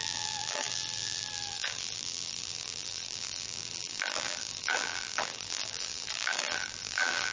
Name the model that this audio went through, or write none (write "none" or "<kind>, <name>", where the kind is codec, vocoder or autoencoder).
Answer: vocoder, BigVGAN v2